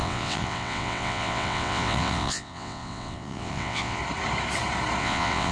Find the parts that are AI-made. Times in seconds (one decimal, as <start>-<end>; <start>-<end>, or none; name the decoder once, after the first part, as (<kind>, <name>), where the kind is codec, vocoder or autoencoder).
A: 0.0-4.0 (vocoder, WaveNeXt); 5.0-5.5